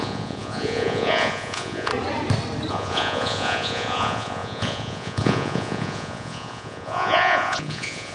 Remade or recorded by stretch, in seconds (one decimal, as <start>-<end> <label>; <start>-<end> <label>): 0.0-1.9 remade; 1.9-2.7 recorded; 2.7-8.1 remade